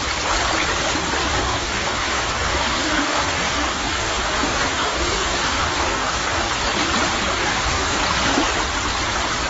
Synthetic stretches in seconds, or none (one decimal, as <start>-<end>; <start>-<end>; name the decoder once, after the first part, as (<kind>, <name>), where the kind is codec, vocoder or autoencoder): 1.2-6.5 (codec, DAC); 7.4-8.0